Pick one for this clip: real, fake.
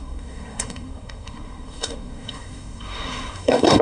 fake